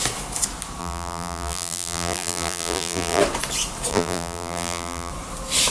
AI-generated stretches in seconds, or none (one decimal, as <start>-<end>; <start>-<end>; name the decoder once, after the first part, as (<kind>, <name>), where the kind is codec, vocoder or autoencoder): 0.8-3.2 (vocoder, BigVGAN v2); 3.9-5.1